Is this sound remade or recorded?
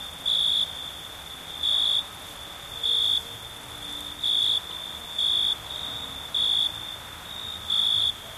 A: recorded